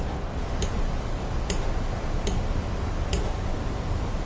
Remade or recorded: recorded